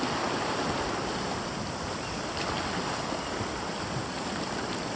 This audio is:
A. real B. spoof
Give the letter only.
A